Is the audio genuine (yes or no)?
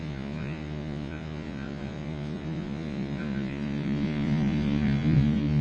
no